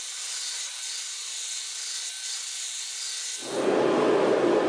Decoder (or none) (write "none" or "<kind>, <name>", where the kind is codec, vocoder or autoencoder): none